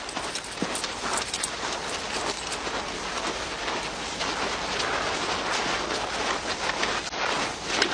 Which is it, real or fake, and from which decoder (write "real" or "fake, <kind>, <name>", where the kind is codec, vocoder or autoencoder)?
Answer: real